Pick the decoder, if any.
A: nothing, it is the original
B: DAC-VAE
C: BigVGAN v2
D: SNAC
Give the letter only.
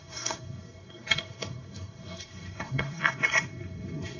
D